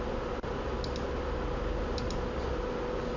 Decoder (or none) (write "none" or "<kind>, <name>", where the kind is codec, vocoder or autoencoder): none